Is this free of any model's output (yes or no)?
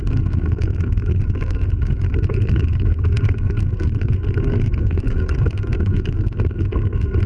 no